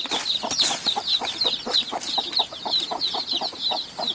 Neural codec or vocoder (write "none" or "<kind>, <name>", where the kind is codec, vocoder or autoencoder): none